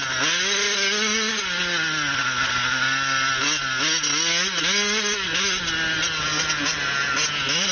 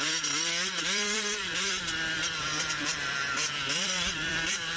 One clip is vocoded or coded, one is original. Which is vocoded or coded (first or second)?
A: second